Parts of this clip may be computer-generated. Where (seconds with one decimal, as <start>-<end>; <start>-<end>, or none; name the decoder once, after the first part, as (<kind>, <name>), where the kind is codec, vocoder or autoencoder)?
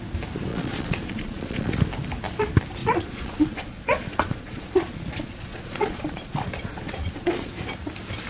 0.5-1.8 (vocoder, Vocos); 2.8-7.5